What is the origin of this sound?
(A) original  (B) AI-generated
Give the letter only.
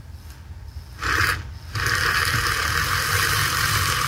A